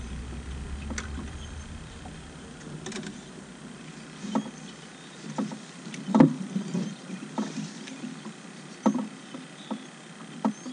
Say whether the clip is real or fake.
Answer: real